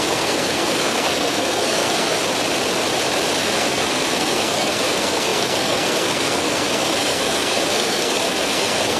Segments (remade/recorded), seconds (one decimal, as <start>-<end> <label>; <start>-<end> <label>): 0.0-2.2 remade; 2.2-3.4 recorded; 3.4-9.0 remade